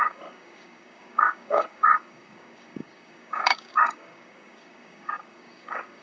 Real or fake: fake